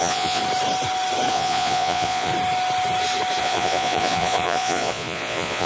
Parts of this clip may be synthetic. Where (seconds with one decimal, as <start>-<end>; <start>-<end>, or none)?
0.0-0.4; 1.3-2.3; 3.4-5.7